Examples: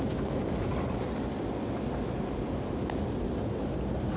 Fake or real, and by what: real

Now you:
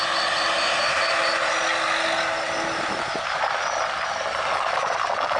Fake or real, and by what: real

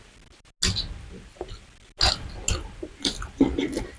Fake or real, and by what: real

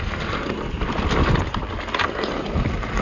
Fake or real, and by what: real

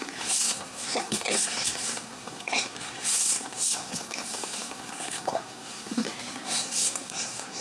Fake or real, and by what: fake, codec, SNAC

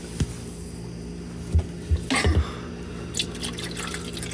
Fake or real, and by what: real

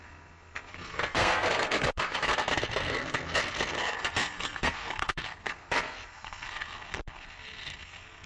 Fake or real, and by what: fake, codec, SNAC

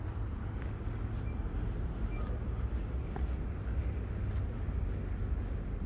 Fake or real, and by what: real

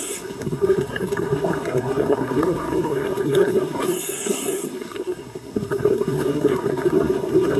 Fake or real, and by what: fake, codec, SNAC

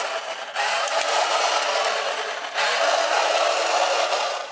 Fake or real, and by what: real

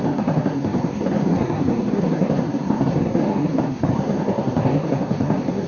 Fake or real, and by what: fake, codec, SNAC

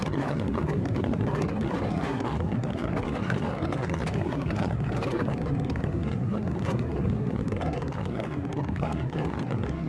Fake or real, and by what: fake, codec, SNAC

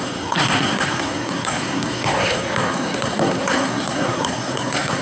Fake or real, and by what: fake, codec, SNAC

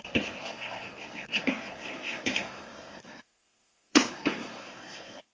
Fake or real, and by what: fake, codec, SNAC